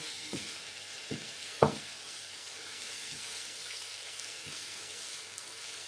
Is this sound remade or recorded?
remade